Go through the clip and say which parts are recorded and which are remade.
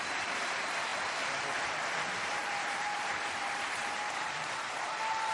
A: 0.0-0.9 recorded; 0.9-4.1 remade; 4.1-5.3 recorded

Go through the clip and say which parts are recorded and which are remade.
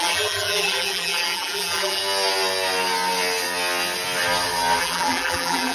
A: 0.0-2.0 remade; 2.0-4.8 recorded; 4.8-5.7 remade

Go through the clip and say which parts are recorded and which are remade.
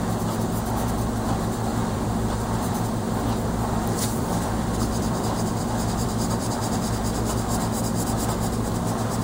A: 0.0-1.7 recorded; 1.7-6.8 remade; 6.8-9.2 recorded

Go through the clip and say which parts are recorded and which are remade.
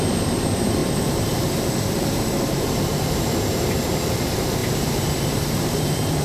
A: 0.0-6.2 remade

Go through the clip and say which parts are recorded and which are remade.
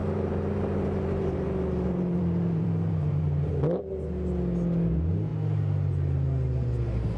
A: 0.0-3.5 remade; 3.5-7.2 recorded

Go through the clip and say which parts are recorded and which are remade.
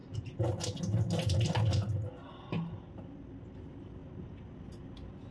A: 0.0-5.3 recorded